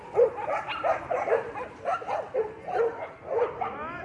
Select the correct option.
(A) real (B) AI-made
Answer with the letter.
A